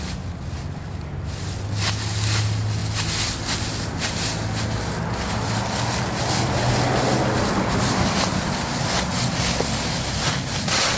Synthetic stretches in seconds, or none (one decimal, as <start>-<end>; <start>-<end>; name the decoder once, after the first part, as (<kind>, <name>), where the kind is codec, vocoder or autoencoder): none